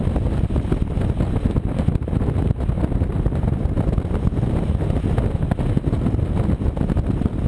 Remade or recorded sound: recorded